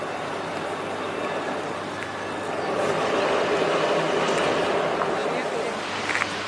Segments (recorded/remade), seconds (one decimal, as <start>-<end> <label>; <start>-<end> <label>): 0.0-6.5 recorded